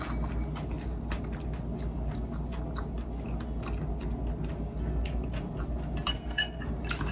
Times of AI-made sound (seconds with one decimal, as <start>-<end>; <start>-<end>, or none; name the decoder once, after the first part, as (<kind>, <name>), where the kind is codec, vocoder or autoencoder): 6.1-6.6 (codec, SNAC)